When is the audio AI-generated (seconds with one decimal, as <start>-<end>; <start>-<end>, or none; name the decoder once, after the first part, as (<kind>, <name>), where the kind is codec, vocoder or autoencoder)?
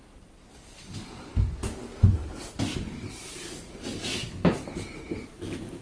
none